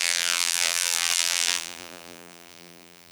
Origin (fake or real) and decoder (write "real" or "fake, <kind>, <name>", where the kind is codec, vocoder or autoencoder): fake, vocoder, BigVGAN v2